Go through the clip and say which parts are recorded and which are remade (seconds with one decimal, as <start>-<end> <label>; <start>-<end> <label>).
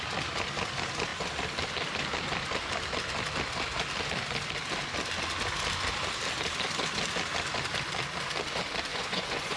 0.0-8.9 recorded; 8.9-9.6 remade